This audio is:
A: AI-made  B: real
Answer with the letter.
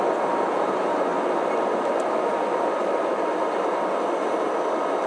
B